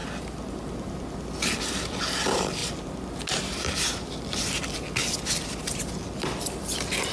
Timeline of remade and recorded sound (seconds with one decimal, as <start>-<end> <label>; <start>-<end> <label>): 0.0-2.0 recorded; 2.0-2.6 remade; 2.6-3.4 recorded; 3.4-5.0 remade; 5.0-5.8 recorded; 5.8-7.1 remade

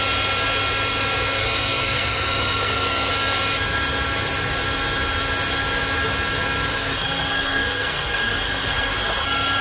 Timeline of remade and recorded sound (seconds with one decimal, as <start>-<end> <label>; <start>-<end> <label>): 0.0-1.4 recorded; 1.4-3.1 remade; 3.1-6.7 recorded; 6.7-8.9 remade; 8.9-9.6 recorded

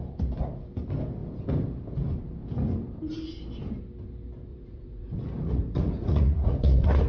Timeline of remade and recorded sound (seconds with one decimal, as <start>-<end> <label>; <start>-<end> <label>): 0.0-4.5 recorded; 4.5-7.1 remade

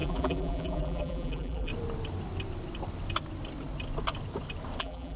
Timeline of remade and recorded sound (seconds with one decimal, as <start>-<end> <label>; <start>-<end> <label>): 0.0-1.7 remade; 1.7-4.8 recorded; 4.8-5.2 remade

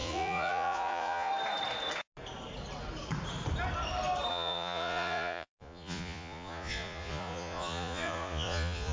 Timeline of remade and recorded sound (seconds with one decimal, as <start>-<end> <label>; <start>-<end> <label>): 0.0-1.3 remade; 1.3-4.3 recorded; 4.3-8.9 remade